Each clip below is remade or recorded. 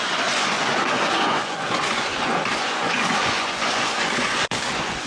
remade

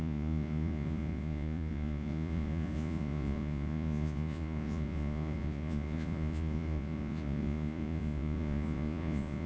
remade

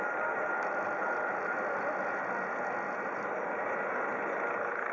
recorded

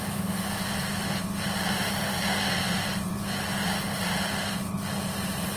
recorded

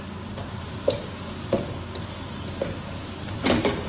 recorded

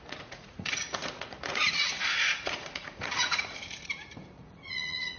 remade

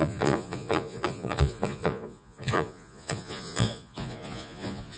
remade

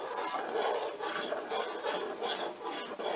recorded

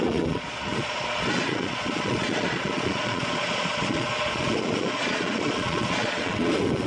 remade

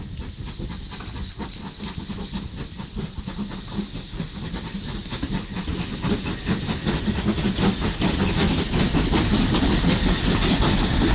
recorded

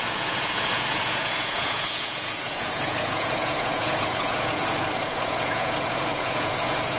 remade